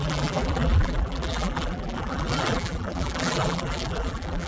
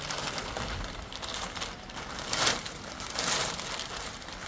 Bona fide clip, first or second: second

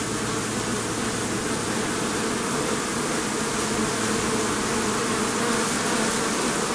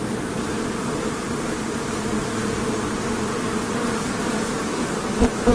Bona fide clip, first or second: first